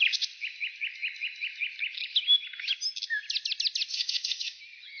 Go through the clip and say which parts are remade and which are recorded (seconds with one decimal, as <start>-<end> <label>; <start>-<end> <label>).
0.0-3.9 recorded; 3.9-4.6 remade; 4.6-5.0 recorded